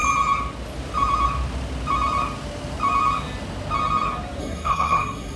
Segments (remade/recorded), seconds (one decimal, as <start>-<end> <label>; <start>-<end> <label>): 0.0-4.4 recorded; 4.4-5.4 remade